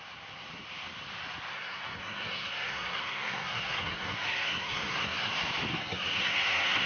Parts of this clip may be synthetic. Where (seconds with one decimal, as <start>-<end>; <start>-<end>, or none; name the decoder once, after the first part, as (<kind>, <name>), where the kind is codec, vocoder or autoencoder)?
1.5-5.3 (codec, SNAC); 5.7-6.9